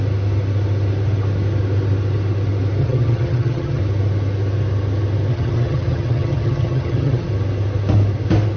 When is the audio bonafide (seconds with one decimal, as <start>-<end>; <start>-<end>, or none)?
0.0-2.8; 3.8-5.3; 7.3-8.6